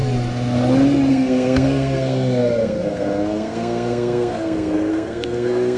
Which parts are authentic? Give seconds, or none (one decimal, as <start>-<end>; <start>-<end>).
0.0-1.1